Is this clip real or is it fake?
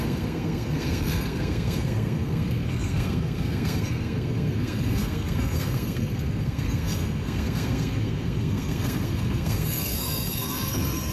fake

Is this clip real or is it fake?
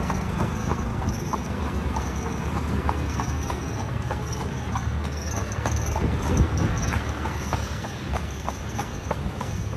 fake